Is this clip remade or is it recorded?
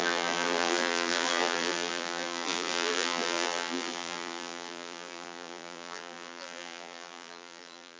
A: remade